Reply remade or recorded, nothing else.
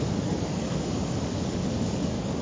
remade